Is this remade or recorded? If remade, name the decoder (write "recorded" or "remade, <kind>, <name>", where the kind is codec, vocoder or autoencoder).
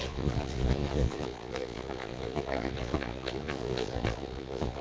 remade, vocoder, Vocos